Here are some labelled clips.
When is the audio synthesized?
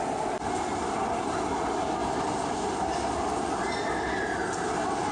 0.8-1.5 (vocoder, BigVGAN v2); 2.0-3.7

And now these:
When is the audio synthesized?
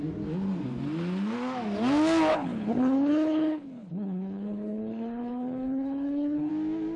2.3-6.5 (codec, HILCodec)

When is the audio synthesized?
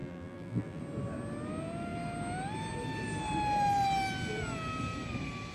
0.0-0.8 (vocoder, BigVGAN v2)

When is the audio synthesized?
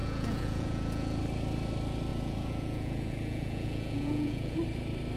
0.0-1.2 (vocoder, Vocos); 2.1-4.6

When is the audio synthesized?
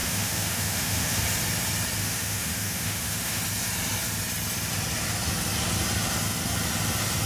0.0-1.2 (autoencoder, DAC-VAE); 2.0-3.4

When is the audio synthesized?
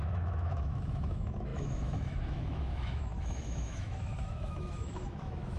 0.0-5.6 (autoencoder, DAC-VAE)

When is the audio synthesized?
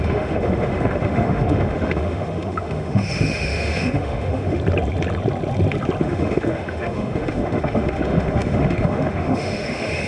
0.0-4.6 (autoencoder, DAC-VAE); 6.0-10.1